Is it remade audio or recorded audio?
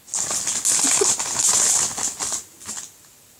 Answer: recorded